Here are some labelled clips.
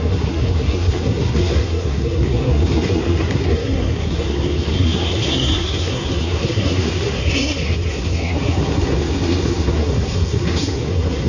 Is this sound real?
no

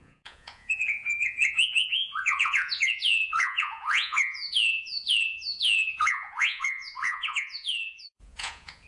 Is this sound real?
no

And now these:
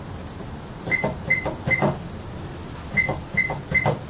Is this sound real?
yes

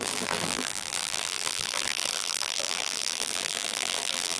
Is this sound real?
no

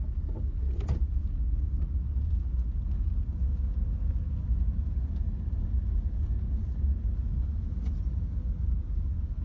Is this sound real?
yes